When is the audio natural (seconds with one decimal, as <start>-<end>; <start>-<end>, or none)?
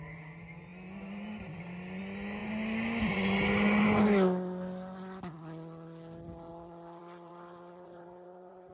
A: 0.0-7.0